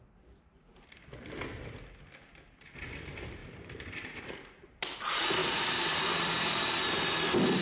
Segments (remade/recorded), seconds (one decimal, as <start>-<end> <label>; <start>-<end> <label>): 0.0-3.4 recorded; 3.4-4.2 remade; 4.2-5.4 recorded; 5.4-6.7 remade; 6.7-7.6 recorded

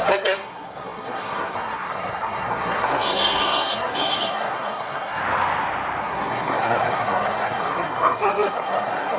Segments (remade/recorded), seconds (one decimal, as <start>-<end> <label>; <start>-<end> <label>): 0.0-5.2 remade; 5.2-6.0 recorded; 6.0-9.2 remade

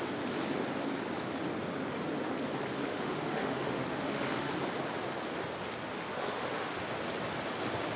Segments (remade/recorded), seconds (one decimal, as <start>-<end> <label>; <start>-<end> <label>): 0.0-2.9 recorded; 2.9-4.5 remade; 4.5-5.9 recorded; 5.9-6.8 remade; 6.8-8.0 recorded

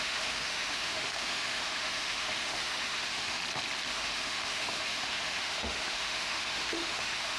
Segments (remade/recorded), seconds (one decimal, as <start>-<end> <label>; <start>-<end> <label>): 0.0-3.4 remade; 3.4-3.9 recorded; 3.9-7.4 remade

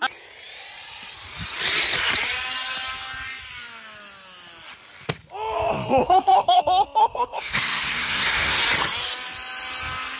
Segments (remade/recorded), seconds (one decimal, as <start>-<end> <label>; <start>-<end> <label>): 0.0-6.0 recorded; 6.0-6.6 remade; 6.6-7.0 recorded; 7.0-8.6 remade; 8.6-10.2 recorded

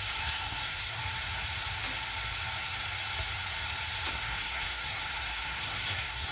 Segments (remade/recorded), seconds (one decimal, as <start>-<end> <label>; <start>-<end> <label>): 0.0-1.0 remade; 1.0-4.1 recorded; 4.1-6.3 remade